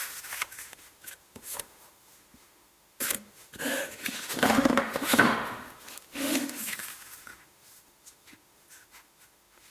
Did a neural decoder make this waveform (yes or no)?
yes